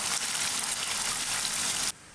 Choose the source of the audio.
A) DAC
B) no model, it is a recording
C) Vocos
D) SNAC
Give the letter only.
B